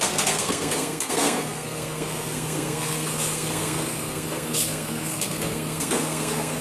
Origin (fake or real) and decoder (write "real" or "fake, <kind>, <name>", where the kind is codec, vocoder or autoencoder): fake, codec, SNAC